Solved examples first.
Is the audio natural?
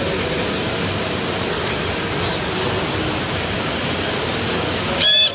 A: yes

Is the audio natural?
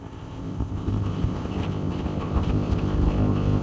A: no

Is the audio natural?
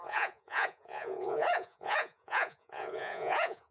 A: no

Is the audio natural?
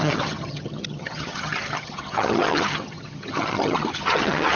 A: no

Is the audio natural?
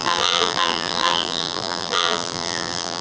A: no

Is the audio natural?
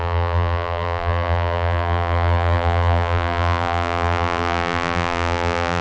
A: no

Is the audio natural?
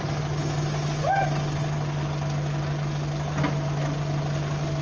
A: yes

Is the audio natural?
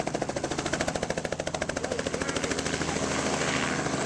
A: yes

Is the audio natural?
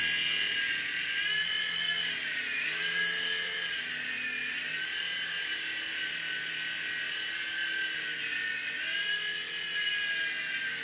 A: yes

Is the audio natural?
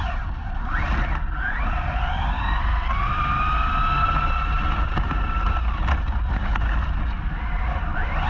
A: yes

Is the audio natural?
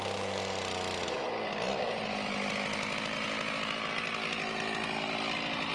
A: yes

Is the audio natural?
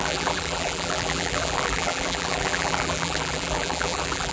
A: no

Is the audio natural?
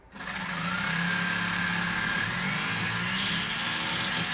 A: yes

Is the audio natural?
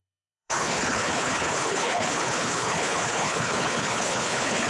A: no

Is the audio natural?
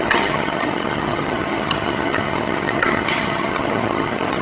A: no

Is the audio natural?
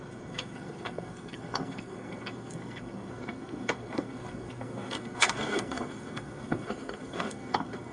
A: no